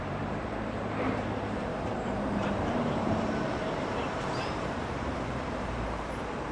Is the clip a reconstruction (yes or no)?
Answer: yes